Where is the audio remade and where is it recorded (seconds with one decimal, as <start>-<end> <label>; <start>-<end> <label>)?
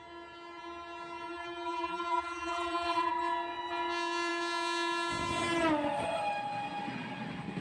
0.0-1.3 recorded; 1.3-3.1 remade; 3.1-7.6 recorded